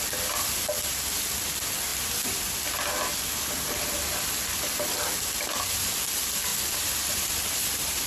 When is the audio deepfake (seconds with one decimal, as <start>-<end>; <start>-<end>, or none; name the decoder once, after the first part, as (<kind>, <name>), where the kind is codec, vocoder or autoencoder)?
1.9-2.4 (vocoder, BigVGAN v2); 6.5-8.1